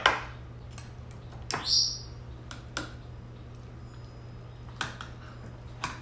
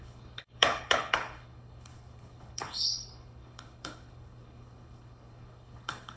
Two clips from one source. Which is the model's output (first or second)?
second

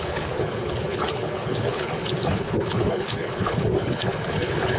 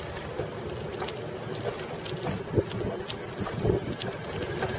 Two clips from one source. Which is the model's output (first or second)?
first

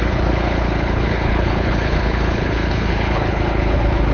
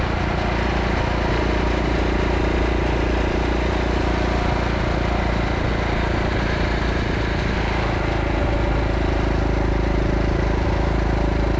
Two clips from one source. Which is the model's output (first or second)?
first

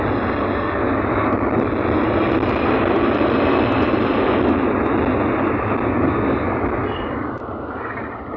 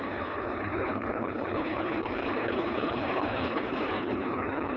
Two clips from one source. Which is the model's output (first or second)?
second